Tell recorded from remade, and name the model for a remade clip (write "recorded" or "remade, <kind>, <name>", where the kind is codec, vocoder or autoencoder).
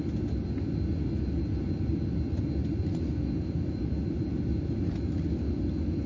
recorded